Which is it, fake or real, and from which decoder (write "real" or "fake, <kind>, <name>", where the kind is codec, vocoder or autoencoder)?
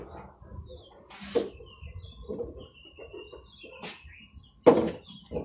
real